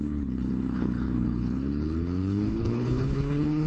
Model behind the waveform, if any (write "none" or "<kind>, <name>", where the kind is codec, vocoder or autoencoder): codec, HILCodec